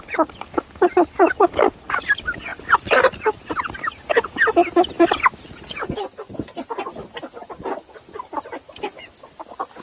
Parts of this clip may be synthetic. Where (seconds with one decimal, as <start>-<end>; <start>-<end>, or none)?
none